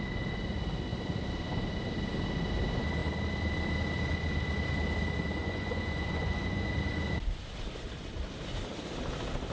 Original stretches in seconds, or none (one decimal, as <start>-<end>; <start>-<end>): 0.0-5.4; 6.7-9.5